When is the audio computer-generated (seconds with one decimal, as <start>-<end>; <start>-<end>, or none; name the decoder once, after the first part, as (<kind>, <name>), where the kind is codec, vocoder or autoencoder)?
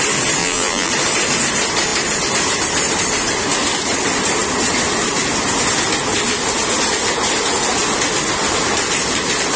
0.4-0.9 (vocoder, BigVGAN v2)